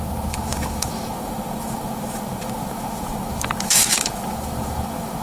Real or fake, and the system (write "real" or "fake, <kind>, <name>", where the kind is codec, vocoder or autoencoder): fake, autoencoder, DAC-VAE